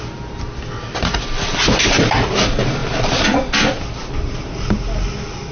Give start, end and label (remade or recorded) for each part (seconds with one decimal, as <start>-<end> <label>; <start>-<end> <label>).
0.0-5.5 recorded